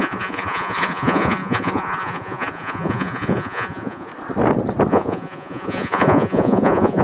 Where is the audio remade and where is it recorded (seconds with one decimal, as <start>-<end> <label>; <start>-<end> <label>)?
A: 0.0-4.1 remade; 4.1-4.9 recorded; 4.9-7.0 remade